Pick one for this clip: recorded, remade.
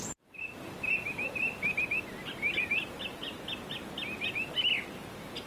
recorded